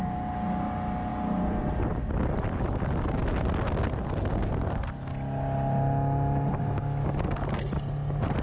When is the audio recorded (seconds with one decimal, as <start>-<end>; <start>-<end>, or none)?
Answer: 0.0-8.4